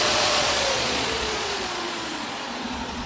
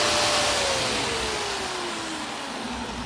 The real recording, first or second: second